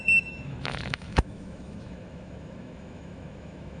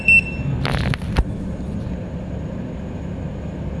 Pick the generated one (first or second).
first